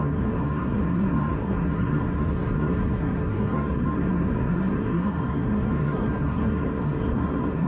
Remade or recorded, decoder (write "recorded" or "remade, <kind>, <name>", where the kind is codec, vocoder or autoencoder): remade, codec, SNAC